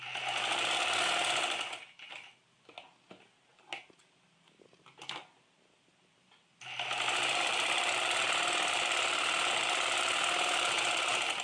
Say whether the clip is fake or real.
real